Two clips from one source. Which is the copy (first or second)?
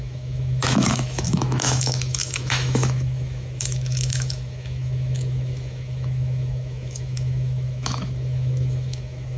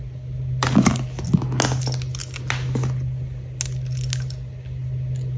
first